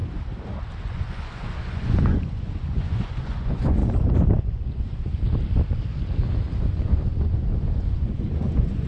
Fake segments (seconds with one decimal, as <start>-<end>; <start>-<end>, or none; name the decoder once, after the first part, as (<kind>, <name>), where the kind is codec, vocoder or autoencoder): 0.8-3.8 (vocoder, Vocos); 4.4-5.1; 6.6-8.9